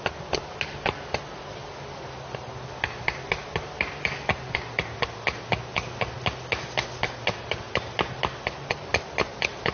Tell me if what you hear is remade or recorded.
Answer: recorded